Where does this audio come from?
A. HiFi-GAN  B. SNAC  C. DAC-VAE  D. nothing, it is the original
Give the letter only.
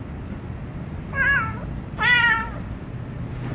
D